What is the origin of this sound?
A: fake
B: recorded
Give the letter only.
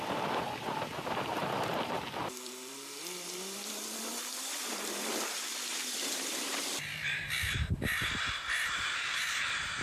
A